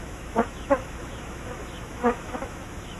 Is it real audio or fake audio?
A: fake